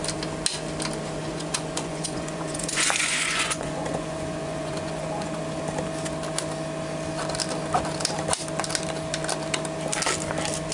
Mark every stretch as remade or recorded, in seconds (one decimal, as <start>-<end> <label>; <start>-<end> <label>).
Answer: 0.0-1.2 recorded; 1.2-5.4 remade; 5.4-10.7 recorded